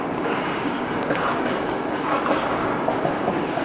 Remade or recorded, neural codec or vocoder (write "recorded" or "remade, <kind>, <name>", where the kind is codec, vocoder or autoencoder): remade, codec, DAC